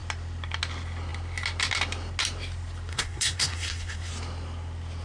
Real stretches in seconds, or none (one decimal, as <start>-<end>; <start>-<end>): 0.0-2.9; 4.1-5.0